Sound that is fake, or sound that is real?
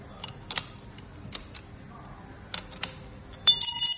real